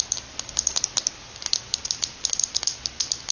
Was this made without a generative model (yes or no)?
no